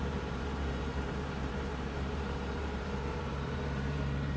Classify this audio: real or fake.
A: fake